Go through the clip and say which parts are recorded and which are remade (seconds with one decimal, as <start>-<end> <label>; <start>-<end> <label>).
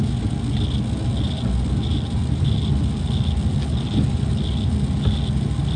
0.0-5.8 recorded